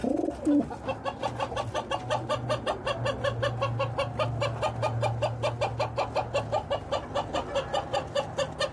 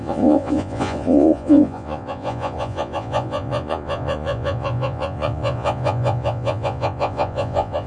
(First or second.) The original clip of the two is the first